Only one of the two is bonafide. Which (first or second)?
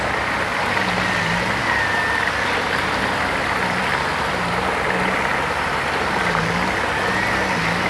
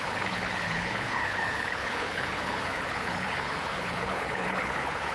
first